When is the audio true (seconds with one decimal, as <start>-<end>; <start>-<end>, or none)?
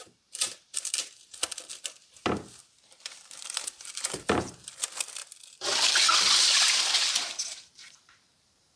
1.4-2.6; 5.2-6.3